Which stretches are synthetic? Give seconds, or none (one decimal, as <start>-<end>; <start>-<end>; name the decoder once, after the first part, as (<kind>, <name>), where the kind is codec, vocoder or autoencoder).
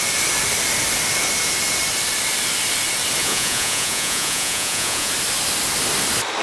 3.2-5.1 (vocoder, Vocos)